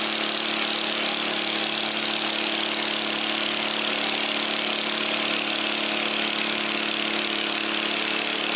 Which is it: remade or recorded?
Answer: recorded